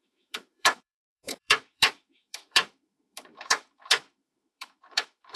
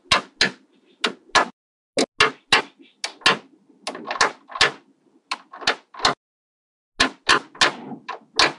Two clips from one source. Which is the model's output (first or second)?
first